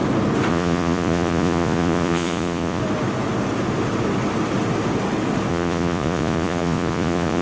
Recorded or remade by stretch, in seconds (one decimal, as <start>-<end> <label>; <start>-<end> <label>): 0.0-0.5 recorded; 0.5-2.8 remade; 2.8-5.5 recorded; 5.5-7.4 remade